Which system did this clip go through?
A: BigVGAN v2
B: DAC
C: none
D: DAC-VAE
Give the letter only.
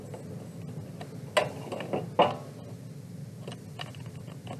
C